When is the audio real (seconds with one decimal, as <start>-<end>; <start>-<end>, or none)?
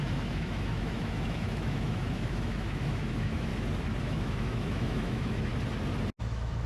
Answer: 3.5-4.0; 5.5-6.2